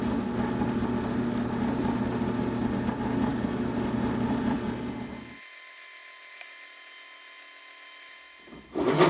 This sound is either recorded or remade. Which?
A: recorded